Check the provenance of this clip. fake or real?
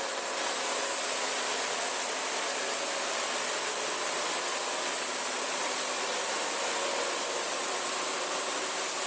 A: real